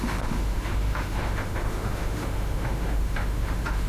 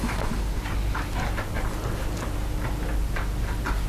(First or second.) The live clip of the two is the second